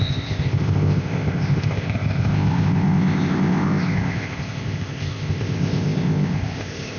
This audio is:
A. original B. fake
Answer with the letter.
B